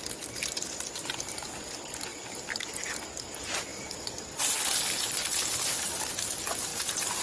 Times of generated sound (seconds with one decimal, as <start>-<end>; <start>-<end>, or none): 2.1-2.7; 3.7-6.3; 6.7-7.2

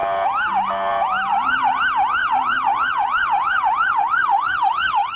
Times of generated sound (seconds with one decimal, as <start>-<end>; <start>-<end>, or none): 1.3-1.8; 2.2-5.2

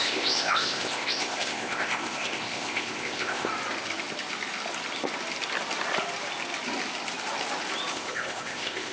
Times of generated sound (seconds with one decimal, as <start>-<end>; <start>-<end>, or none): 0.0-3.5; 7.9-8.9

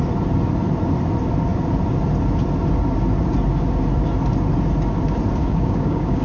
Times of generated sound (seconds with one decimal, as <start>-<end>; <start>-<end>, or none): 5.4-6.2

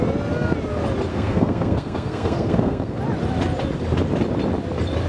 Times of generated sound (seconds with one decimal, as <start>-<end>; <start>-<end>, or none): 1.1-3.0

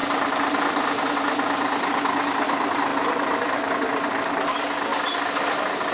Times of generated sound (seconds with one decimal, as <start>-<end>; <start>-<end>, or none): 0.0-1.1; 2.9-3.7

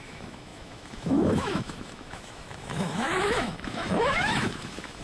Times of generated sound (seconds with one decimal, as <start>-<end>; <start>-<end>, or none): 0.0-5.0